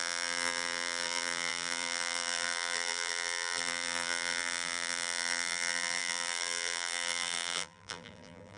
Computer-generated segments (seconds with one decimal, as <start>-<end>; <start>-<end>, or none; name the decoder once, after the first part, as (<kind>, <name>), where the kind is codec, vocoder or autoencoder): 0.0-8.6 (vocoder, BigVGAN v2)